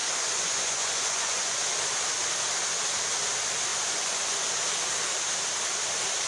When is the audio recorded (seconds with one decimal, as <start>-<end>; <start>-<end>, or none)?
1.6-3.7; 4.5-6.3